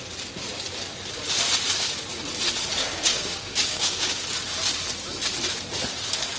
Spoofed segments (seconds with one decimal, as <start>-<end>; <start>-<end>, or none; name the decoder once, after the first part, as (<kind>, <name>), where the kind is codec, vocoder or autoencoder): 2.8-4.2 (codec, DAC)